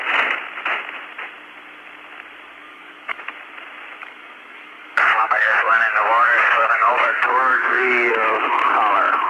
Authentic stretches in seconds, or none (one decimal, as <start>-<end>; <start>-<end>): 0.0-2.6; 3.3-4.0; 8.1-9.3